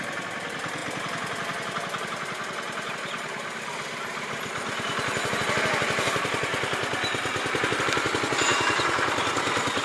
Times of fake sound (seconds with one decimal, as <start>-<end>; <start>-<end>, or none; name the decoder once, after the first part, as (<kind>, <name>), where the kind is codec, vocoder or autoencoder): none